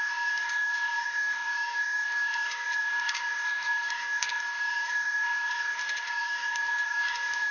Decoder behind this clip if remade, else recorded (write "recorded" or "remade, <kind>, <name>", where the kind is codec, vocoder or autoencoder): remade, codec, DAC